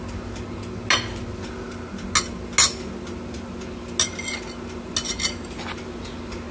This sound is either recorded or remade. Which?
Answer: recorded